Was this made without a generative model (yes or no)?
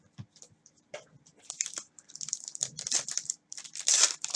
no